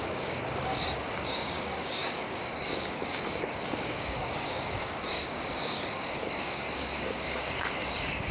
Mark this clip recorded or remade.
remade